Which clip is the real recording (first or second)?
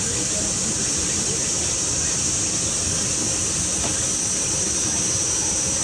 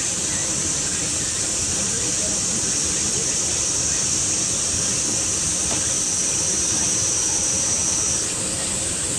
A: first